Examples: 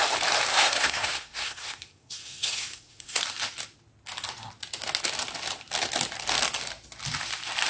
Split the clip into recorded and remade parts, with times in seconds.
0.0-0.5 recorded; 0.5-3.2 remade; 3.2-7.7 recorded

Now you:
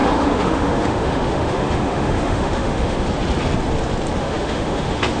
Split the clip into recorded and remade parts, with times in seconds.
0.0-3.1 remade; 3.1-4.2 recorded; 4.2-5.2 remade

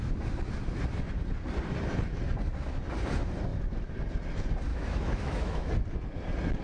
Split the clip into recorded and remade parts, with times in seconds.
0.0-4.7 recorded; 4.7-5.7 remade; 5.7-6.6 recorded

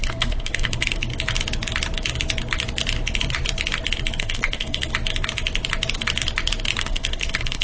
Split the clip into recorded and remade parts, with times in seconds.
0.0-1.1 remade; 1.1-4.2 recorded; 4.2-4.9 remade; 4.9-6.8 recorded; 6.8-7.6 remade

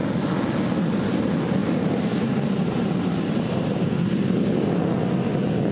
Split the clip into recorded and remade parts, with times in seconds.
0.0-1.6 recorded; 1.6-3.9 remade; 3.9-5.7 recorded

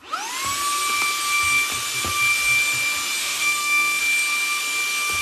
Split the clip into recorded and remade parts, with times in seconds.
0.0-3.2 recorded; 3.2-4.0 remade; 4.0-5.2 recorded

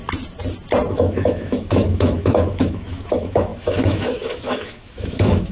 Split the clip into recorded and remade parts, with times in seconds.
0.0-0.9 recorded; 0.9-5.5 remade